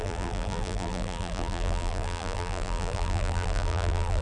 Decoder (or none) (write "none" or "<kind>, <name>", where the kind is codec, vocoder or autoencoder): vocoder, BigVGAN v2